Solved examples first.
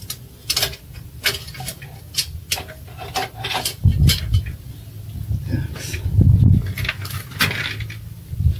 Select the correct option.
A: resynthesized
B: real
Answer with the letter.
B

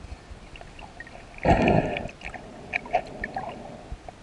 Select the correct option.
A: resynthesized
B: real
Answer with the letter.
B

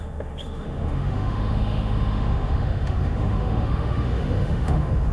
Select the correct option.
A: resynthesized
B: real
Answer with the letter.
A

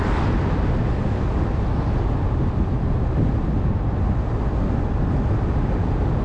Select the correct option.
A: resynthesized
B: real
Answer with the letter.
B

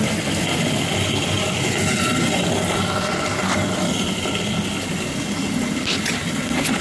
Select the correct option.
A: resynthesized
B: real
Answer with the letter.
B